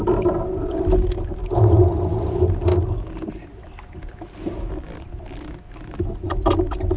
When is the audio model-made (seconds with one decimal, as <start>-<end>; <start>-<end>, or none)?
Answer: none